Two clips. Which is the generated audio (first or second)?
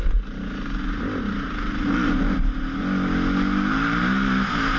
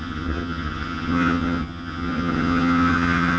second